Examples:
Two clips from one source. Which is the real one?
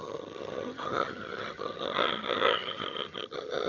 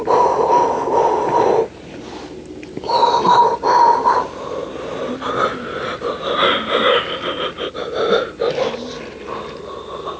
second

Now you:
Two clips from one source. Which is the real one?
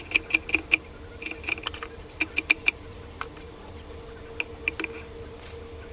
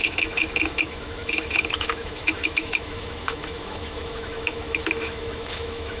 first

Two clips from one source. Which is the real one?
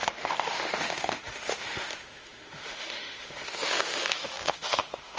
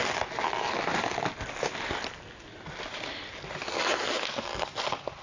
second